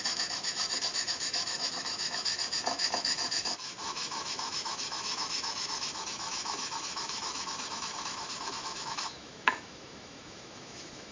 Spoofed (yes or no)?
yes